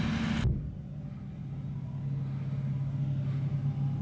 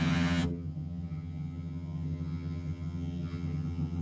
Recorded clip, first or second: first